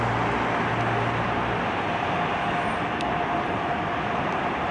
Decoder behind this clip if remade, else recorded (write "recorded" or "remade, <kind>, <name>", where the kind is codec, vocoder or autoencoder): recorded